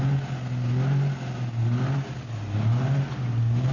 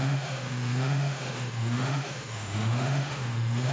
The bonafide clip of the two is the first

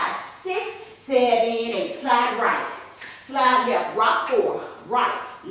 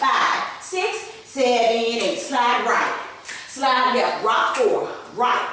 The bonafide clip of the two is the second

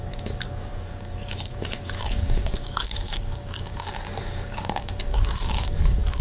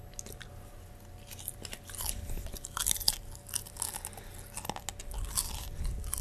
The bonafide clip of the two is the second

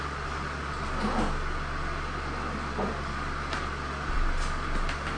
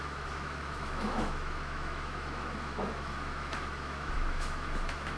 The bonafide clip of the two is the first